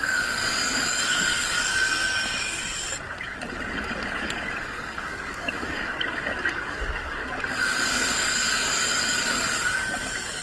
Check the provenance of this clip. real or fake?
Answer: fake